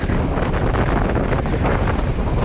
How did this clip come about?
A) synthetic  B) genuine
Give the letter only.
B